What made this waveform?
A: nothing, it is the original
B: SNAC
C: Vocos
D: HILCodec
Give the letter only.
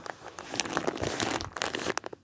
A